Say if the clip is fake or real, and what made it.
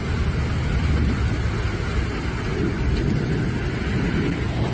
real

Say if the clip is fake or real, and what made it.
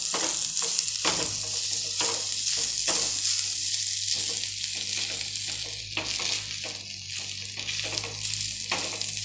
real